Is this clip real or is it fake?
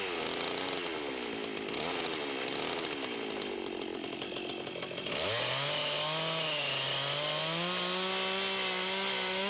real